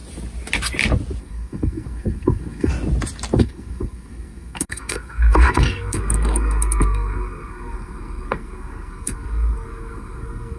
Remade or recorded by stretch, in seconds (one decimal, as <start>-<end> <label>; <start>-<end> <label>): 0.0-1.2 recorded; 1.2-2.7 remade; 2.7-3.4 recorded; 3.4-10.6 remade